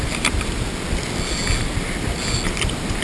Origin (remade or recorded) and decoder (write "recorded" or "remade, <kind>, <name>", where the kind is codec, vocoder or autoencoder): recorded